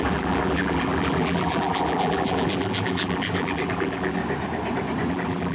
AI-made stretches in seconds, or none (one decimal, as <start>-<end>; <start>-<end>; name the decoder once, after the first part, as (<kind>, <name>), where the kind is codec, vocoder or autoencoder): 0.0-4.2 (vocoder, BigVGAN v2); 5.1-5.5